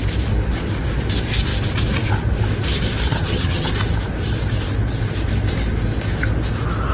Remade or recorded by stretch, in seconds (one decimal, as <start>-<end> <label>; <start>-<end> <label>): 0.0-3.1 recorded; 3.1-3.7 remade; 3.7-6.9 recorded

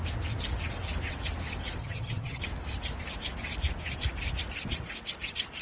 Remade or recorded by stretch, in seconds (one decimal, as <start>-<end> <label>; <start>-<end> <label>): 0.0-1.8 recorded; 1.8-2.4 remade; 2.4-5.6 recorded

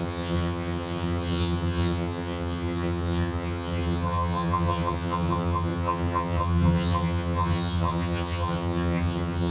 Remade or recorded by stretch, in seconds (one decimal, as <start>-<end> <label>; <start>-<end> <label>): 0.0-9.5 remade

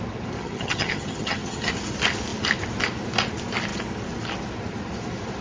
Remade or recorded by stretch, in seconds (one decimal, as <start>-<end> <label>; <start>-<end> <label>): 0.0-0.4 recorded; 0.4-1.7 remade; 1.7-5.4 recorded

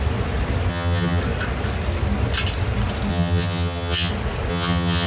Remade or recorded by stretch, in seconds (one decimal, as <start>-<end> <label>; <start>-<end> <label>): 0.0-0.7 recorded; 0.7-1.2 remade; 1.2-3.1 recorded; 3.1-4.1 remade; 4.1-4.5 recorded; 4.5-5.1 remade